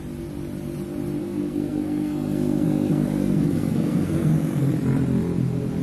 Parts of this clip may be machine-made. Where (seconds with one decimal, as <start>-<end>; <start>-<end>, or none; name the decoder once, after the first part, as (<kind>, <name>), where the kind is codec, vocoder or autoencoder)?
1.2-4.7 (codec, SNAC)